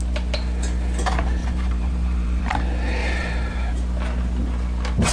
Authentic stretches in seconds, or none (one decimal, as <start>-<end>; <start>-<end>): 0.0-1.4; 2.4-3.0; 3.7-5.1